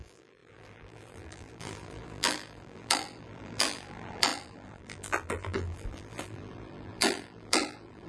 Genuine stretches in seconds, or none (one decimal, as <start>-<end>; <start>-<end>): none